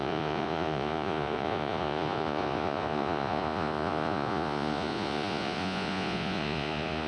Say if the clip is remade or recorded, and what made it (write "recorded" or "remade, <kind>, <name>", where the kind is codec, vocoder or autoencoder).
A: remade, vocoder, Vocos